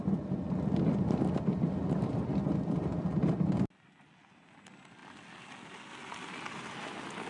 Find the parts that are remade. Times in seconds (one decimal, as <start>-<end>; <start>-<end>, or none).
none